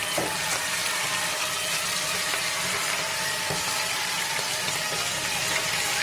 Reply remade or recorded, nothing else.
recorded